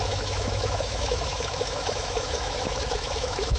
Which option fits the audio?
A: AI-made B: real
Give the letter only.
A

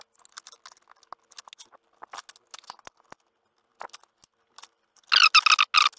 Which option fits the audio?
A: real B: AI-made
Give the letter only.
A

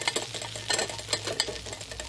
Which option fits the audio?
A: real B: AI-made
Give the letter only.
A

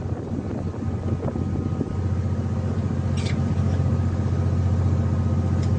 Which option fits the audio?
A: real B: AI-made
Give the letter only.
A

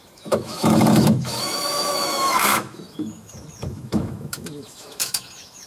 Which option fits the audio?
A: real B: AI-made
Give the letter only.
B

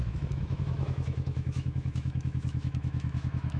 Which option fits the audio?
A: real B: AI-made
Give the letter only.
B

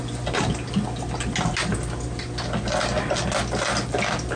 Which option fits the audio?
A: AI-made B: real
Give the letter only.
B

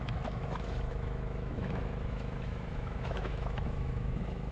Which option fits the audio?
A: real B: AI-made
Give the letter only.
B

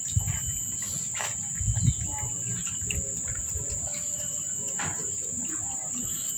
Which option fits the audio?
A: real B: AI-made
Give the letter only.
A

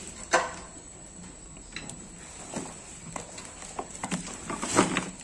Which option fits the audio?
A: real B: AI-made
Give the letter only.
A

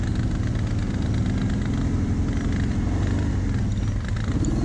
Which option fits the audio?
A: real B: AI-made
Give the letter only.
A